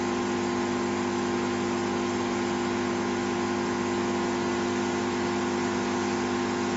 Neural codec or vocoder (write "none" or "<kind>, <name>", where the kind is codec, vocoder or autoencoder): none